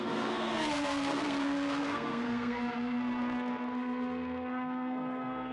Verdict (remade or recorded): remade